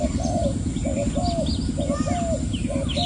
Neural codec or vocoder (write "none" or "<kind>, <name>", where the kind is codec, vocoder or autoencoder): none